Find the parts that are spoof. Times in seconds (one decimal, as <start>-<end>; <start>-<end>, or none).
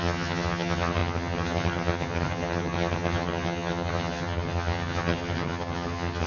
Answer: 0.0-6.3